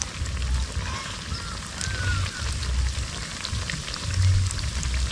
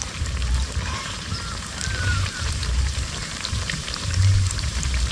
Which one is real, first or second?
first